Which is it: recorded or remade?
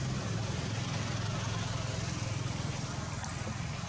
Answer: recorded